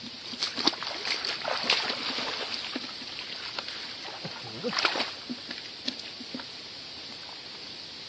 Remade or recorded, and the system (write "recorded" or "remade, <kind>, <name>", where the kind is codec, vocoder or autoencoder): recorded